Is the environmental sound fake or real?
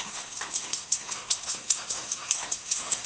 fake